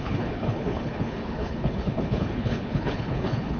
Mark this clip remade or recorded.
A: remade